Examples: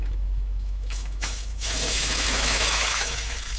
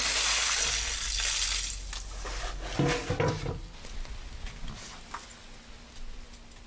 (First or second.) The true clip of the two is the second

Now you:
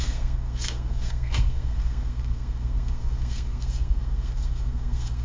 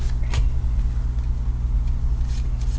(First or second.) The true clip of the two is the second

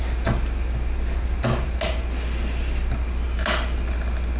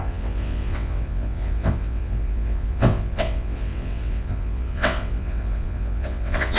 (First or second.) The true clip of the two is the first